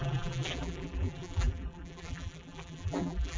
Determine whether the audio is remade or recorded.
remade